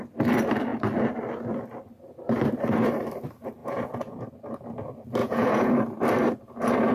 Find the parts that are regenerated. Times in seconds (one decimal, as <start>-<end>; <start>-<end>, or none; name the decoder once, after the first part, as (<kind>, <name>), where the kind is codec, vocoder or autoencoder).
3.6-4.2 (vocoder, Vocos); 5.2-5.7